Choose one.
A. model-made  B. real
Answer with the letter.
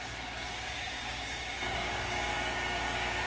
A